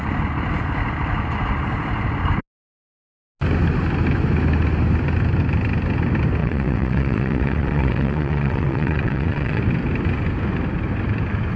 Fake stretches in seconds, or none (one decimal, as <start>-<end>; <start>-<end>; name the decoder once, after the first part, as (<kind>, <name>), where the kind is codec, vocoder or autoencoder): 6.4-9.6 (vocoder, WaveNeXt)